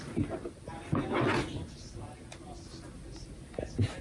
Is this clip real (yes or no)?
yes